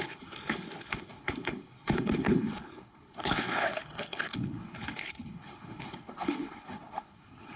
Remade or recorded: remade